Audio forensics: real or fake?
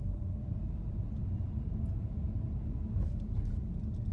real